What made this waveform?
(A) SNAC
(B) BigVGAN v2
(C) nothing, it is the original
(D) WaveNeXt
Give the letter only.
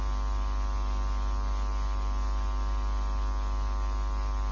C